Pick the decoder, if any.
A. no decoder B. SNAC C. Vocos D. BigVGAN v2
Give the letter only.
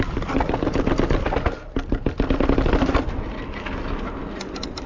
A